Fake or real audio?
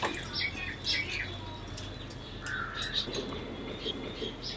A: real